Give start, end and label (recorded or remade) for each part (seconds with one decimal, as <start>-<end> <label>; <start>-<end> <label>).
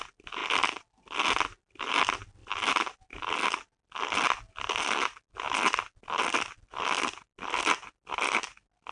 0.0-8.9 recorded